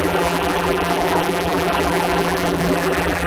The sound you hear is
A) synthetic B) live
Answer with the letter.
A